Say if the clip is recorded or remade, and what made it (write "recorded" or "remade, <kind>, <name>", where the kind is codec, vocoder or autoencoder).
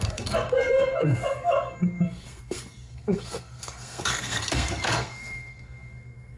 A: remade, codec, SNAC